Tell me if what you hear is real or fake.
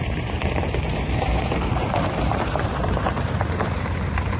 fake